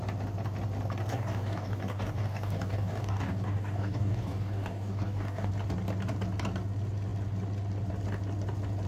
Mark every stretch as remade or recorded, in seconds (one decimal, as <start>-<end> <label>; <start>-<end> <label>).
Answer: 0.0-1.1 recorded; 1.1-5.5 remade; 5.5-8.9 recorded